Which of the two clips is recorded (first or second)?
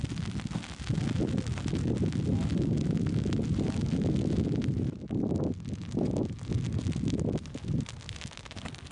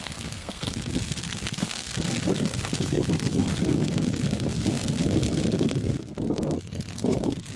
first